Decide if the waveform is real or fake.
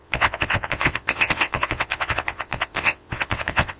fake